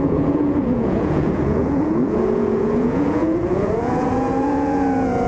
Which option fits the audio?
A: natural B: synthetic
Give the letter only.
B